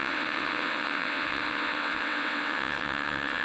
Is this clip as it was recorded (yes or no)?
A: no